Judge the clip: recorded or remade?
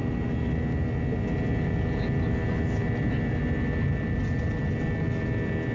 recorded